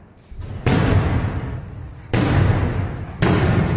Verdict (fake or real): real